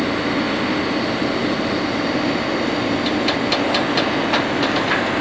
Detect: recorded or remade recorded